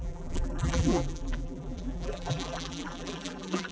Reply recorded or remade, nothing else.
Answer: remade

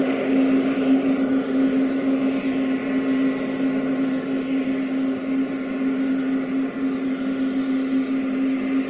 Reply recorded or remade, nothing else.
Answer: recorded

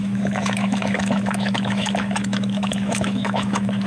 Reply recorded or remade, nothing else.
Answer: remade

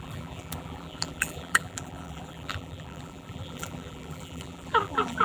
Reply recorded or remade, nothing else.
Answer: remade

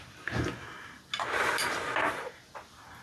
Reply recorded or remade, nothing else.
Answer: recorded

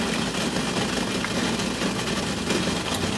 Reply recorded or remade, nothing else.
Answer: recorded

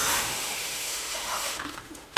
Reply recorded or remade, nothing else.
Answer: remade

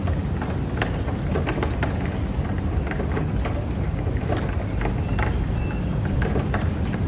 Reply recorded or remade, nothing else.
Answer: recorded